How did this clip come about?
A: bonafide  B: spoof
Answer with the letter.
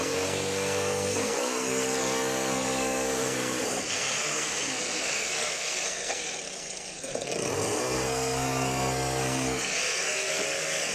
B